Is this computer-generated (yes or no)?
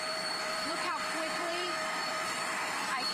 yes